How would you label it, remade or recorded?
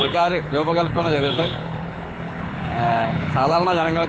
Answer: remade